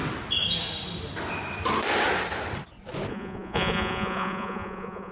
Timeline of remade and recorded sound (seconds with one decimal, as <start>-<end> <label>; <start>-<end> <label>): 0.0-3.1 recorded; 3.1-5.1 remade